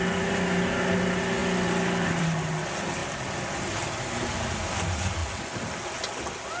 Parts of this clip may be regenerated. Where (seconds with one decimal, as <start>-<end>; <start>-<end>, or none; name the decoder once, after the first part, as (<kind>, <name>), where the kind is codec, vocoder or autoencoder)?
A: none